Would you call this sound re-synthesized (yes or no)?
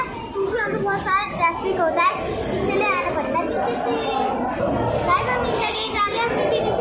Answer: no